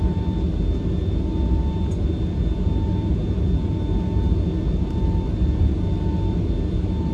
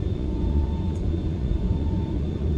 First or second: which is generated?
second